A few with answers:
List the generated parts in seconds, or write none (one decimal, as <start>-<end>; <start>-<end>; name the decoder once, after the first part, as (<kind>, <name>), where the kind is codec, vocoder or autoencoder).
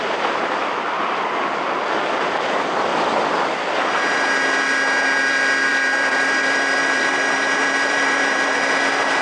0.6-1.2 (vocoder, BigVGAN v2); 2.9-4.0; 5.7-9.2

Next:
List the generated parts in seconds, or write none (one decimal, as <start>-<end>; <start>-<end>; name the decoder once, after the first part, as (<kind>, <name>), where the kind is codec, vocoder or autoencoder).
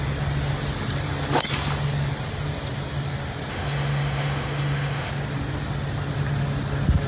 3.5-5.1 (autoencoder, DAC-VAE)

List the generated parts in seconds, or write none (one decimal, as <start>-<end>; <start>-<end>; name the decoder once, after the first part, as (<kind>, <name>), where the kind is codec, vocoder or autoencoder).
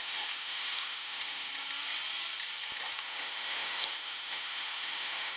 0.0-1.5 (autoencoder, DAC-VAE); 2.9-5.4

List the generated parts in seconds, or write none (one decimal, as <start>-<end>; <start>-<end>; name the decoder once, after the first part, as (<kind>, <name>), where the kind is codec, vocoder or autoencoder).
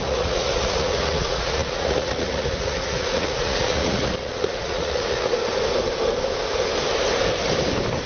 0.0-5.4 (vocoder, Vocos)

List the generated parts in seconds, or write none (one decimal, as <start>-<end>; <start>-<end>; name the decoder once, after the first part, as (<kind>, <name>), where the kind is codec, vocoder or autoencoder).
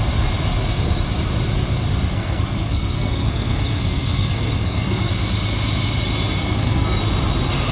2.1-5.1 (codec, SNAC); 6.4-7.0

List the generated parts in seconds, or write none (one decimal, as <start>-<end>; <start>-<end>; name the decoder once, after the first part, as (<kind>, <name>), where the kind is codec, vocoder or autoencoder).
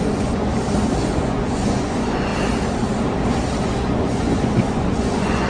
0.0-0.5 (vocoder, Vocos); 1.0-2.3; 3.6-5.5